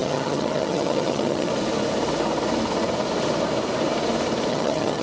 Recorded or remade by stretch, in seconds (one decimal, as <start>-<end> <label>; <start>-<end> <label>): 0.0-1.5 remade; 1.5-4.5 recorded; 4.5-5.0 remade